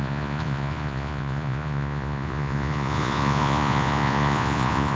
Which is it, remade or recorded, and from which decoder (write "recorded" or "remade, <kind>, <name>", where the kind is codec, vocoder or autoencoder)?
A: remade, vocoder, Vocos